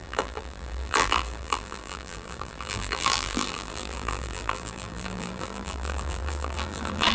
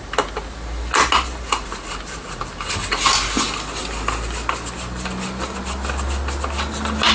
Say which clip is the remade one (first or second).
first